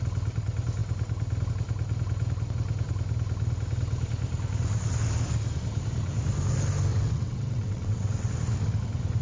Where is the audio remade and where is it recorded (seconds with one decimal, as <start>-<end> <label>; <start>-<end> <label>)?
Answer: 0.0-6.9 recorded; 6.9-8.3 remade; 8.3-9.2 recorded